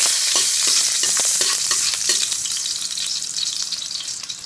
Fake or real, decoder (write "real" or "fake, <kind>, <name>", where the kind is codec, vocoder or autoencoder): fake, vocoder, BigVGAN v2